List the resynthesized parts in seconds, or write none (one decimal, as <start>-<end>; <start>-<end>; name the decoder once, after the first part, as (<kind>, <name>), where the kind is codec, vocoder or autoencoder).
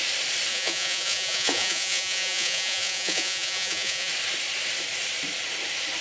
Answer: 0.5-4.1 (vocoder, Vocos)